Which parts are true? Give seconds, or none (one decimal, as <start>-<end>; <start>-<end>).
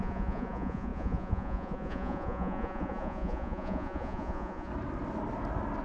4.7-5.8